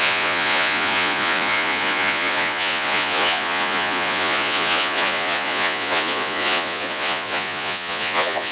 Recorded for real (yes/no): no